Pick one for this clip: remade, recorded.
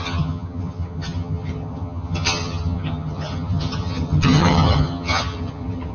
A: remade